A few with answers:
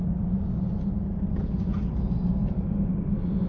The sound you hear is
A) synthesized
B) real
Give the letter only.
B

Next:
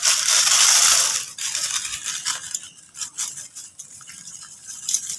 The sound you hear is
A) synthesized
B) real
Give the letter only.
A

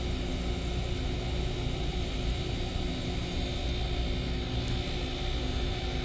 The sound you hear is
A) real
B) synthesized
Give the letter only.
A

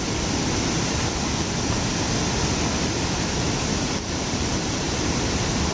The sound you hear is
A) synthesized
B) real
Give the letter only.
B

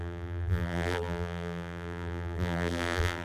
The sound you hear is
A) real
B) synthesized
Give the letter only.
B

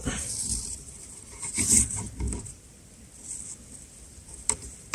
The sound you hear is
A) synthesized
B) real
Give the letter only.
A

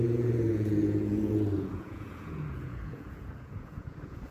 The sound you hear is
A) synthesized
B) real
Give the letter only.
A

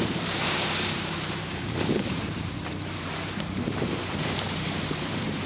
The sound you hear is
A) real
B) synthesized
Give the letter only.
B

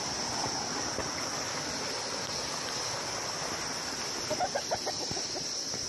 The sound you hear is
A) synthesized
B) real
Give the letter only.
B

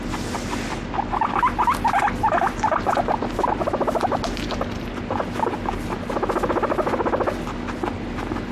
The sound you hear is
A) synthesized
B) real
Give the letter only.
B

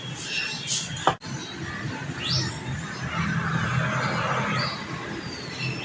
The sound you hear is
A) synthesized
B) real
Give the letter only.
B